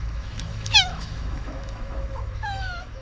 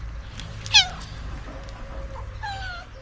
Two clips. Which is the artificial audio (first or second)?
first